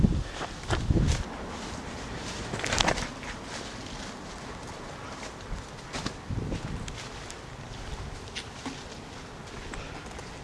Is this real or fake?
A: real